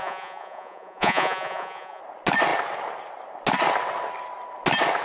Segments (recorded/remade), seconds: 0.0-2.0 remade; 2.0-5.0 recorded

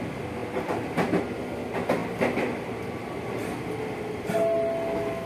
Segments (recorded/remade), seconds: 0.0-5.3 recorded